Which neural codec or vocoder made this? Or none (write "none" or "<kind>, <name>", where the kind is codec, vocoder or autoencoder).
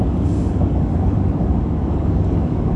codec, DAC